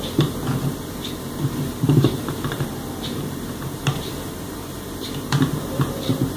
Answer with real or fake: fake